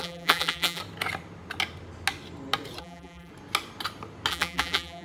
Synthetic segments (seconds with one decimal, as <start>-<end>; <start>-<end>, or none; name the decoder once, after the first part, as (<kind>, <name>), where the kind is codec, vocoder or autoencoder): 0.0-0.8 (vocoder, BigVGAN v2); 2.8-3.3; 4.3-5.0